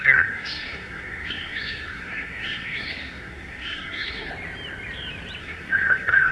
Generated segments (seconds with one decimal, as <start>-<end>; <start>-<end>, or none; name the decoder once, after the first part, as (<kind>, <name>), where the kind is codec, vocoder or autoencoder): 0.0-4.3 (codec, SNAC); 5.4-6.3

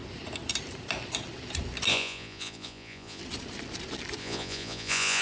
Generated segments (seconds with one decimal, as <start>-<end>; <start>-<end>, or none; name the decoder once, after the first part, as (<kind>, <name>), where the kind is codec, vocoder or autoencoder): 1.9-3.2 (vocoder, Vocos); 4.2-5.2

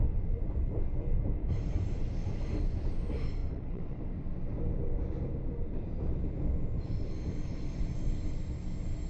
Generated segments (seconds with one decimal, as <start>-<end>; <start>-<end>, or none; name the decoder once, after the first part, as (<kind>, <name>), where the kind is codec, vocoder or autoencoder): 3.4-4.0 (vocoder, WaveNeXt)

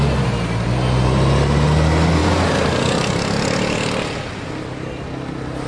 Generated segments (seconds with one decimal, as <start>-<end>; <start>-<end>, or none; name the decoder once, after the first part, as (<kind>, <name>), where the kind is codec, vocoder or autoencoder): none

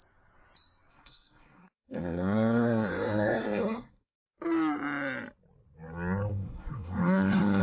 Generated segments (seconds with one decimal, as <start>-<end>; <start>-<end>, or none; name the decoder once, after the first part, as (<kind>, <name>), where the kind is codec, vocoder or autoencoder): 0.9-4.2 (codec, SNAC); 6.3-7.6

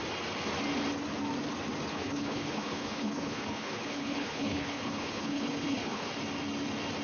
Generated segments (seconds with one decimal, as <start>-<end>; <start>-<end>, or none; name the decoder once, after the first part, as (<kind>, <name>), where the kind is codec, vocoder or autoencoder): 1.9-6.1 (codec, HILCodec)